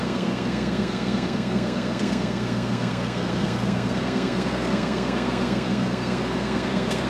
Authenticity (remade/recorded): remade